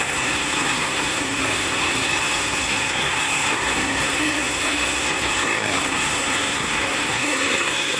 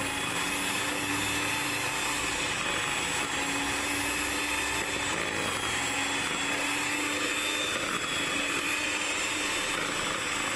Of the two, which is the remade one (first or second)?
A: first